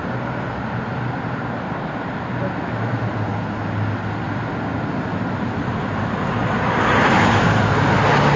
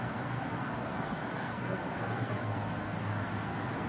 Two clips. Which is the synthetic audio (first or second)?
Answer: second